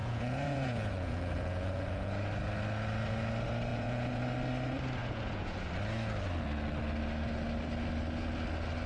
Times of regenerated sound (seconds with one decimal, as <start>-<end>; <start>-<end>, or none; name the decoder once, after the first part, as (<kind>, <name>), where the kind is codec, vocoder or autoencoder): 0.0-2.3 (vocoder, Vocos); 3.7-4.2; 5.0-5.7